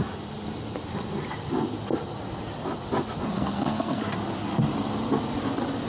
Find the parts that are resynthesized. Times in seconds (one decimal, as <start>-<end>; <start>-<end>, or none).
3.3-4.0